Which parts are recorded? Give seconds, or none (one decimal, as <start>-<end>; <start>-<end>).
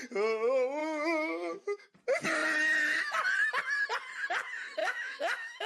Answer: 0.0-0.8; 1.9-4.8